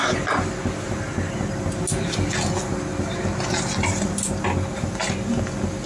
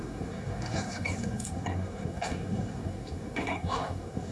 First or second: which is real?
first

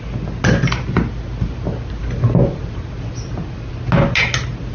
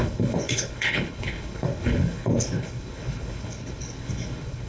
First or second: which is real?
first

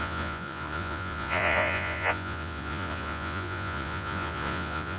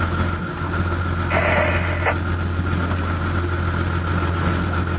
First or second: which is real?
second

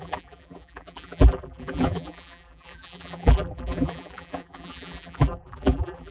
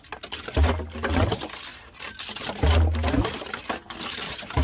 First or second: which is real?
second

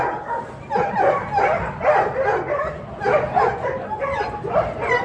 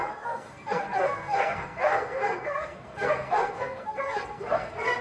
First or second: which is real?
first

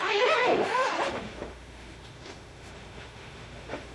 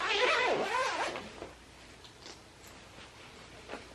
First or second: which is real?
second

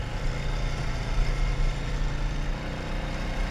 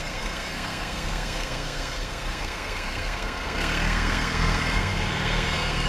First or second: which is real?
first